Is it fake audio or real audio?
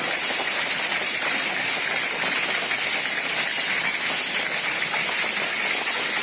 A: real